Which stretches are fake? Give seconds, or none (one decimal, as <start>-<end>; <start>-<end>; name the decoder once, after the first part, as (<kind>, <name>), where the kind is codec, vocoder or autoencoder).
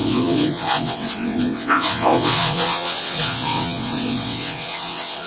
0.0-5.3 (vocoder, WaveNeXt)